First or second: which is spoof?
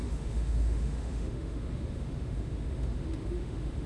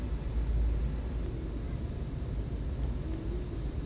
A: first